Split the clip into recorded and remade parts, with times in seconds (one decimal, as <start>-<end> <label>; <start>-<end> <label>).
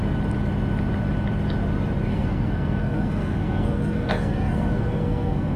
0.0-2.1 recorded; 2.1-5.6 remade